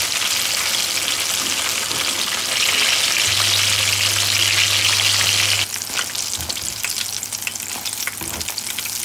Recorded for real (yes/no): yes